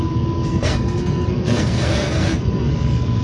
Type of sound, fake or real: fake